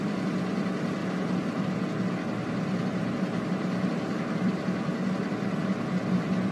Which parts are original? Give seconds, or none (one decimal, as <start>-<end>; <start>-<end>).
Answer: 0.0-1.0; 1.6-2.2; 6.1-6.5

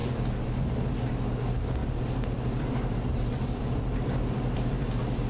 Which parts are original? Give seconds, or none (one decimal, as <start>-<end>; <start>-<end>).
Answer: 0.0-1.8

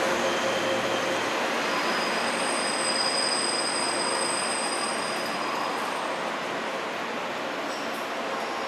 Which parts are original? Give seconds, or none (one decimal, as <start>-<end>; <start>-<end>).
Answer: 0.0-4.9; 5.7-8.7

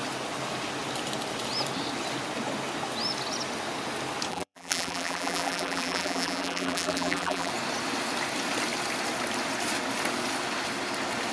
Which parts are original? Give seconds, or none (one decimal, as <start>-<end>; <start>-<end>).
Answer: 0.0-4.3; 7.5-11.3

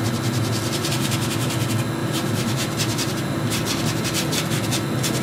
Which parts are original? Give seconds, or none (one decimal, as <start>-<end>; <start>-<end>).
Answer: 0.0-2.0; 3.6-5.2